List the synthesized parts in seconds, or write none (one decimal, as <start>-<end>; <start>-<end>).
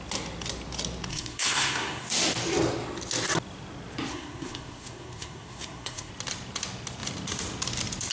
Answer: 1.1-2.1; 4.1-6.1